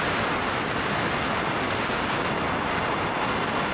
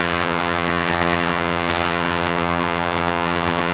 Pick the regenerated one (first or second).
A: second